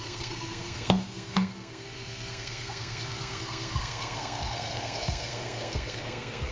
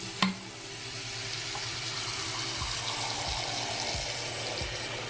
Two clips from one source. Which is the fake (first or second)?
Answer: first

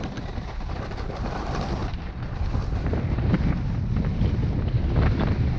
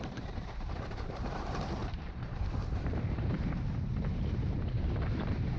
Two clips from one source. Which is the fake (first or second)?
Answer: second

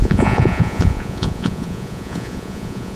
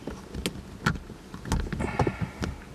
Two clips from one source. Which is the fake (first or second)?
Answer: first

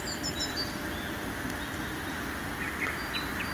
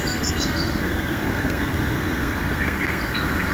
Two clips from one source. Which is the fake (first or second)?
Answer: second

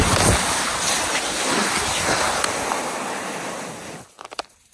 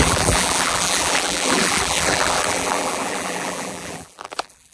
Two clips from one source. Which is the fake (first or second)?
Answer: second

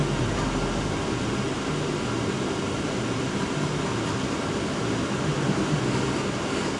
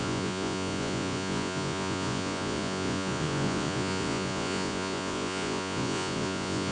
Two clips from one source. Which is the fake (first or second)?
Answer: second